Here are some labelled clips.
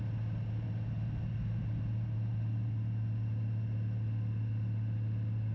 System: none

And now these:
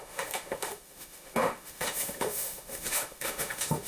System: autoencoder, DAC-VAE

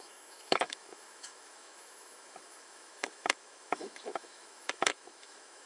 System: autoencoder, DAC-VAE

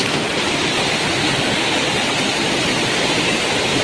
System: none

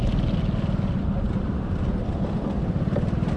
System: none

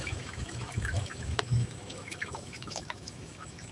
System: autoencoder, DAC-VAE